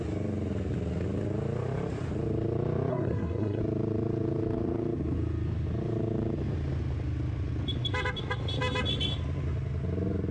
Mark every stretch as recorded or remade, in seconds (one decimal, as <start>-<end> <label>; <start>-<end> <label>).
0.0-2.9 recorded; 2.9-3.6 remade; 3.6-10.3 recorded